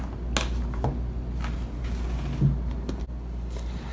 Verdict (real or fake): real